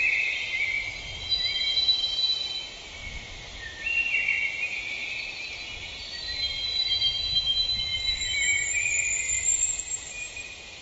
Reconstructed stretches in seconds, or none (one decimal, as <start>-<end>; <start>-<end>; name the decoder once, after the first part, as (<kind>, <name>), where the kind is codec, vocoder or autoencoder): 0.0-3.0 (vocoder, BigVGAN v2); 4.6-5.0; 5.8-10.8